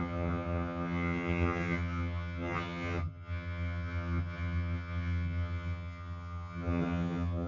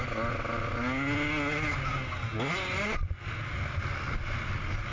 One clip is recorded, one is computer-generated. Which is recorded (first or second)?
second